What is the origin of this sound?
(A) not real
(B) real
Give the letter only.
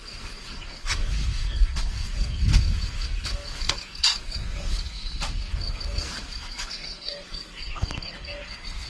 A